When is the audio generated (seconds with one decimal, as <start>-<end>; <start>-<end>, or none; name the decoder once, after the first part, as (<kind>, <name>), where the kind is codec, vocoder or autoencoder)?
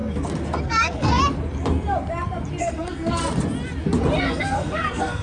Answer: 0.6-1.2 (codec, SNAC); 2.6-3.2; 4.2-5.2